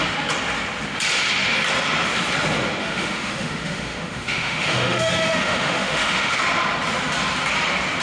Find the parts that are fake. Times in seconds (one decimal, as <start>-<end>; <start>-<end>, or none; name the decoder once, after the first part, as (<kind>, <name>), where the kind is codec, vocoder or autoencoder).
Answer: 2.8-6.4 (autoencoder, DAC-VAE)